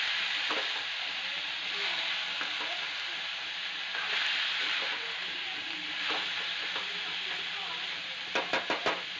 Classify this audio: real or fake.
real